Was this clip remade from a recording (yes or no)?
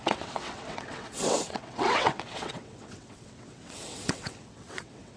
yes